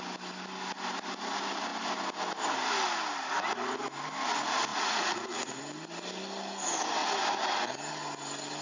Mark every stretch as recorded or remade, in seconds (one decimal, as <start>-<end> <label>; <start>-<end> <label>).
0.0-4.7 recorded; 4.7-5.6 remade; 5.6-8.6 recorded